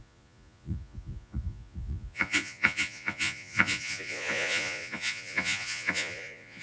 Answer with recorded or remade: remade